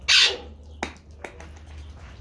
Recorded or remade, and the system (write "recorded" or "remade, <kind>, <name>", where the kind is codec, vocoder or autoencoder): recorded